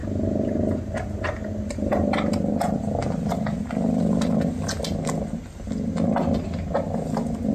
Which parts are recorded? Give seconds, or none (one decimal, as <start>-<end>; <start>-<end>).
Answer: 0.0-7.5